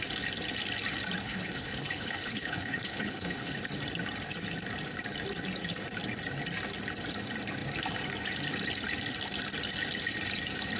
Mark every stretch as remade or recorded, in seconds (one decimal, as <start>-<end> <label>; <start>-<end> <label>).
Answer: 0.0-1.2 recorded; 1.2-3.5 remade; 3.5-10.8 recorded